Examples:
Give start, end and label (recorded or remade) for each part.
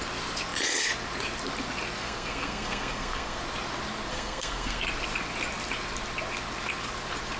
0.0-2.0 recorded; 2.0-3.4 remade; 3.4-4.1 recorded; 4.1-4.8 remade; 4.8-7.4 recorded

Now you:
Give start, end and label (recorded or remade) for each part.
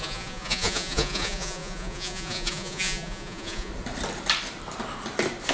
0.0-3.7 remade; 3.7-5.5 recorded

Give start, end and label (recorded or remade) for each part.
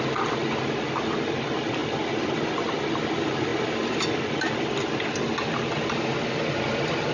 0.0-7.1 recorded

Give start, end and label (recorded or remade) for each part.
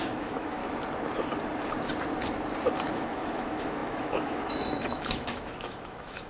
0.0-0.6 remade; 0.6-2.9 recorded; 2.9-6.3 remade